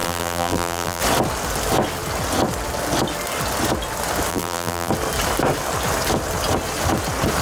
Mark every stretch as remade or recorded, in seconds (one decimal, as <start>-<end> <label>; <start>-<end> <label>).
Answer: 0.0-1.0 remade; 1.0-4.3 recorded; 4.3-4.9 remade; 4.9-7.4 recorded